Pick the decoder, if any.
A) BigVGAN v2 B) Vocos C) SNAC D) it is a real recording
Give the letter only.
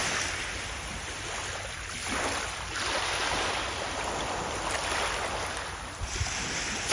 D